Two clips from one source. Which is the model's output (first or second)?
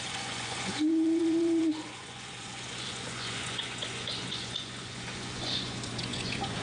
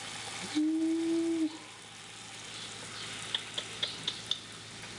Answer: first